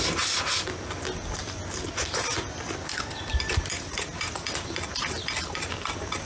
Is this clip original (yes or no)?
yes